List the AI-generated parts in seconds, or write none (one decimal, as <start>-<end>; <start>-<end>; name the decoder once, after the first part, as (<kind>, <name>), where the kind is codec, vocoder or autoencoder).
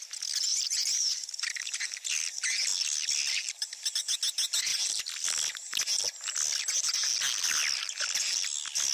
0.5-1.8 (vocoder, BigVGAN v2)